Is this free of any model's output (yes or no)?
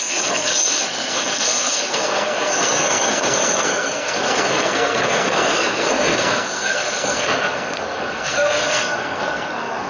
no